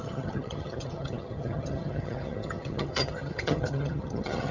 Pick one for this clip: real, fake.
fake